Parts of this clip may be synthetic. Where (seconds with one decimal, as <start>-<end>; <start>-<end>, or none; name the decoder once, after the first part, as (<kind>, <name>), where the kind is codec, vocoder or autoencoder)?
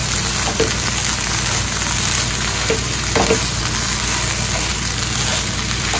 none